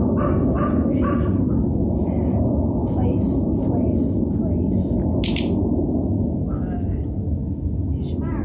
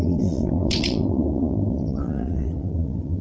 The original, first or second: first